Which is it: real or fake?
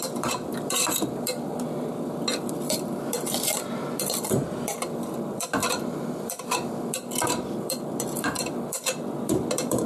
fake